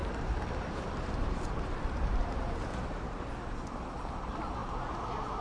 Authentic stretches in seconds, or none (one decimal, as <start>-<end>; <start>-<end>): 3.2-5.4